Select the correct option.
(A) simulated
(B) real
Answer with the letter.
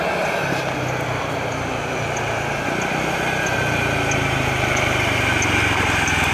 B